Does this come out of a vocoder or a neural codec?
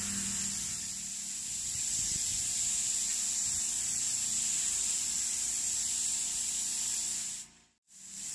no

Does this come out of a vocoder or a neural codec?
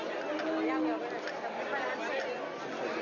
no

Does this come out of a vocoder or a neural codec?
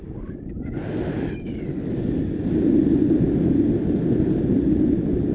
no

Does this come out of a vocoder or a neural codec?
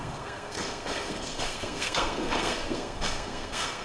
yes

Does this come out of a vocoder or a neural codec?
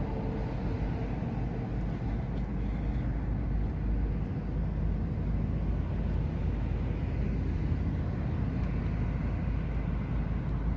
no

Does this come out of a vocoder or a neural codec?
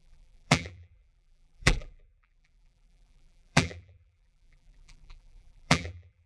yes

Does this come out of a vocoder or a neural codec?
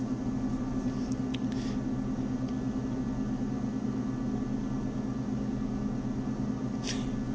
no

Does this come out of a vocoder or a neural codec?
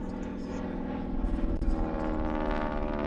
no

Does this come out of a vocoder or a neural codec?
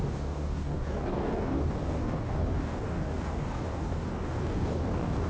yes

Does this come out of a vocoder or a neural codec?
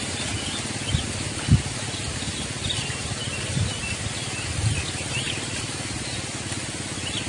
no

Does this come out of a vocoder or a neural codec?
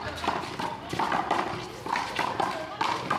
yes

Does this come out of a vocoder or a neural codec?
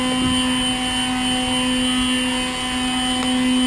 no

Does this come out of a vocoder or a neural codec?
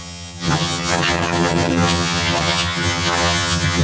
yes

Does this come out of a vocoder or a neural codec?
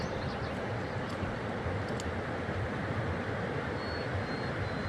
no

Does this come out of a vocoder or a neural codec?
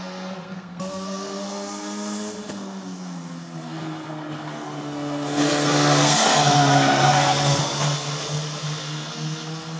yes